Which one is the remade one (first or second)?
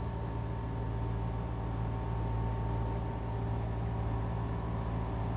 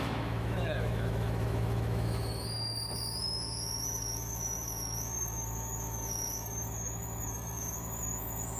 second